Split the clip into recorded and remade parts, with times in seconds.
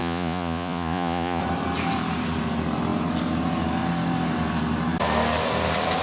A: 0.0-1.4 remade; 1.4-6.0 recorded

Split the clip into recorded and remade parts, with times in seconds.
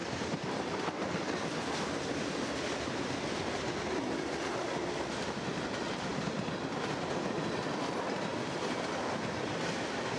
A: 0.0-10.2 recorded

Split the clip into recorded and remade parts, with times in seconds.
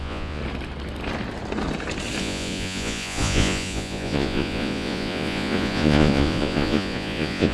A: 0.0-0.4 remade; 0.4-2.2 recorded; 2.2-7.5 remade